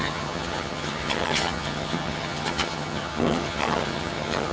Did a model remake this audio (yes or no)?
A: yes